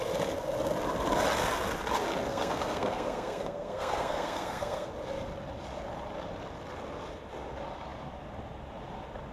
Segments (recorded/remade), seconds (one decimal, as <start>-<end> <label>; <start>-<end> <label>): 0.0-2.3 recorded; 2.3-4.9 remade; 4.9-9.3 recorded